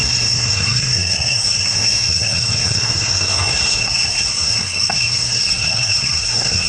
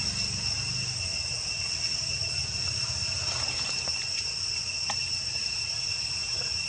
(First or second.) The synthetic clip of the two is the first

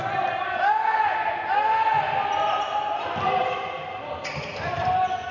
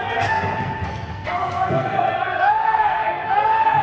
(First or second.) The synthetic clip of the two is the second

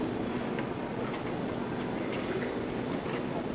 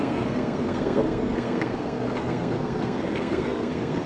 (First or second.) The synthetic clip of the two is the second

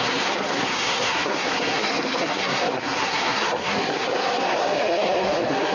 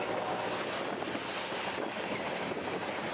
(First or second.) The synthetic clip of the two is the first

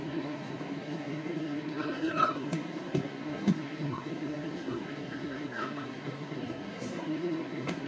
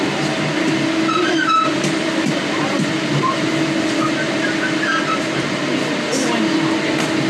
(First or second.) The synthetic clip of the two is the first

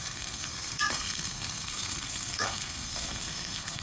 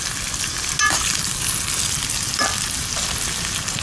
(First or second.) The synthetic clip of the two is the first